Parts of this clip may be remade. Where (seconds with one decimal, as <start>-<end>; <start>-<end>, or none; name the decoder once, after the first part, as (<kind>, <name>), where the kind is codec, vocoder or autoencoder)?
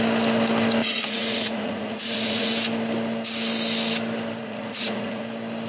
0.8-2.5 (vocoder, Vocos); 4.4-5.2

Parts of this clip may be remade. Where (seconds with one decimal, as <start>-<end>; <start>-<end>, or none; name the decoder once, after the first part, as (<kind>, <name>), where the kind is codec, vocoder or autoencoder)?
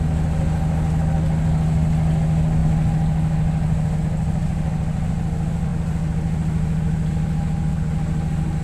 none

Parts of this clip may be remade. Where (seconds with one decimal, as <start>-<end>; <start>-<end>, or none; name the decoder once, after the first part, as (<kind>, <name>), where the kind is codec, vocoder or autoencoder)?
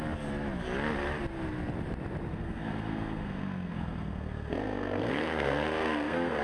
2.3-6.4 (codec, SNAC)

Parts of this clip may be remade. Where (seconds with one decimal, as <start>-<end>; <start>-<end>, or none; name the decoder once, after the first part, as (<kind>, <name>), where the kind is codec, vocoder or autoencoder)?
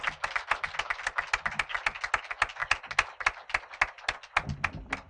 none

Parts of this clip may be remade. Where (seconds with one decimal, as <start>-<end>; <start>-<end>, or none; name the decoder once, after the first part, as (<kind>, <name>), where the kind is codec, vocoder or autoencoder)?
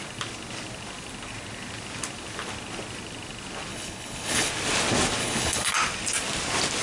3.7-4.5 (codec, HILCodec); 5.2-5.7